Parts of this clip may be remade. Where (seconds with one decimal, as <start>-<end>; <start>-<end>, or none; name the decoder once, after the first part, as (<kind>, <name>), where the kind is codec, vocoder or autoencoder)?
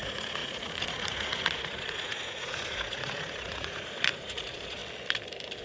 0.0-4.8 (vocoder, Vocos)